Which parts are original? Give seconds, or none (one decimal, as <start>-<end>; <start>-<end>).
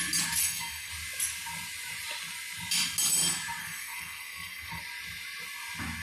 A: 0.0-0.4; 0.9-3.6; 4.8-6.0